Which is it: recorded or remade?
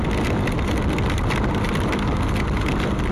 recorded